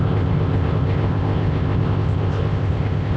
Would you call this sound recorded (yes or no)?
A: no